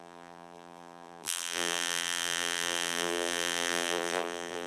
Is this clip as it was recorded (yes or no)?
no